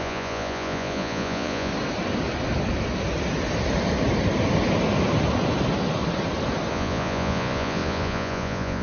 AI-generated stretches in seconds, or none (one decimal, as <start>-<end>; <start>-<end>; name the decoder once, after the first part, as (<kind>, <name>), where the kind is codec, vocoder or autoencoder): 0.0-1.7 (vocoder, Vocos); 6.7-8.8